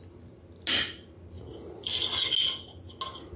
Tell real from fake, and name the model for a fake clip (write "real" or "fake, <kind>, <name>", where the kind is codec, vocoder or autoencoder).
real